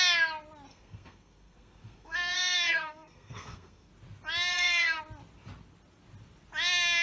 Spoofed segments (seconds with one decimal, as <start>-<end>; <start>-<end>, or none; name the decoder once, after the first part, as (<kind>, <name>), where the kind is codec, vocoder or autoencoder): 0.7-3.9 (codec, SNAC); 4.5-5.0